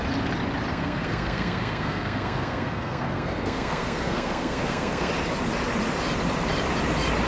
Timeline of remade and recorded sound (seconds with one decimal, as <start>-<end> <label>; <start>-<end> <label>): 0.0-0.7 recorded; 0.7-5.1 remade; 5.1-7.3 recorded